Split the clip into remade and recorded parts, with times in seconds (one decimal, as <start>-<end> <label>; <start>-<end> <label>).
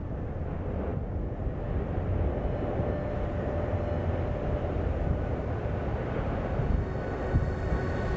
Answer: 0.0-8.2 recorded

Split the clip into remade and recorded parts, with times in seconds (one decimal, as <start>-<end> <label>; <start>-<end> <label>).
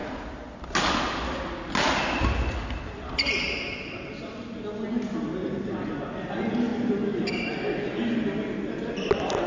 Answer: 0.0-9.5 recorded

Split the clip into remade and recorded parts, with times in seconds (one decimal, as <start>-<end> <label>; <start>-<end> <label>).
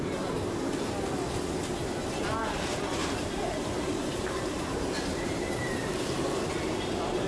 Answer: 0.0-3.0 recorded; 3.0-6.0 remade; 6.0-7.3 recorded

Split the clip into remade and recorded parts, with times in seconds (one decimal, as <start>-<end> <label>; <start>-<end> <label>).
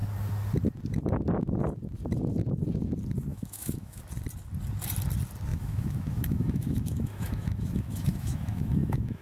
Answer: 0.0-3.3 recorded; 3.3-4.0 remade; 4.0-5.5 recorded; 5.5-9.2 remade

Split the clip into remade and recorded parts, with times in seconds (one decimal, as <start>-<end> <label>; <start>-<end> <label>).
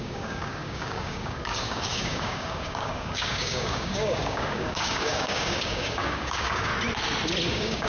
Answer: 0.0-6.7 remade; 6.7-7.5 recorded; 7.5-7.9 remade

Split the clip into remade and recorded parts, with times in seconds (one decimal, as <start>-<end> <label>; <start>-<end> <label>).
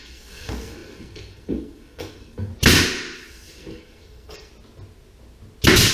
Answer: 0.0-2.5 remade; 2.5-3.3 recorded; 3.3-4.5 remade; 4.5-5.9 recorded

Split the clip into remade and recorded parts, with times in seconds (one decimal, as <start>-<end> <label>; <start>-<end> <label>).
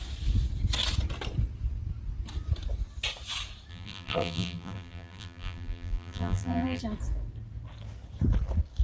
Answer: 0.0-3.7 recorded; 3.7-6.8 remade; 6.8-8.8 recorded